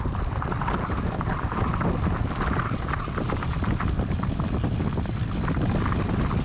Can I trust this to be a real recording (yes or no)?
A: yes